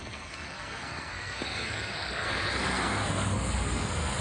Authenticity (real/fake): fake